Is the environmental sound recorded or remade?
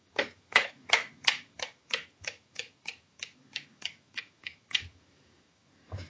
remade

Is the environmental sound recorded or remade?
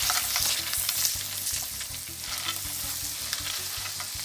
recorded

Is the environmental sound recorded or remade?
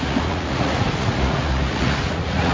remade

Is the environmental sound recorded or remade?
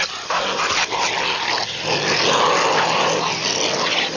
recorded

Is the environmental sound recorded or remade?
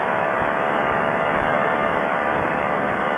remade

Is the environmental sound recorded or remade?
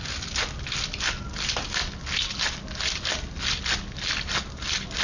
recorded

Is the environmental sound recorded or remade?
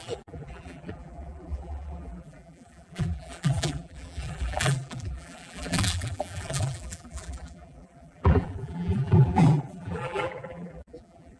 remade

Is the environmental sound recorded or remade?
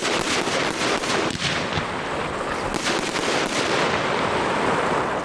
recorded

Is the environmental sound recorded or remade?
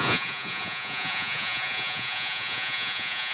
remade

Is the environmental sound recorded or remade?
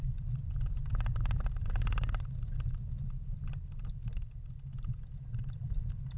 recorded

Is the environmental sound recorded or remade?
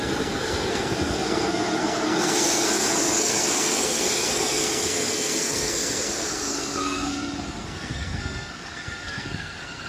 remade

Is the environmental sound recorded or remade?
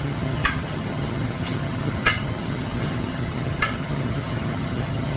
remade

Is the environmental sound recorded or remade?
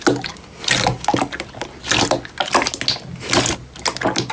recorded